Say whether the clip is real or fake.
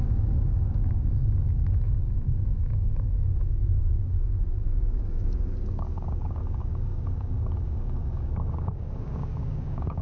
fake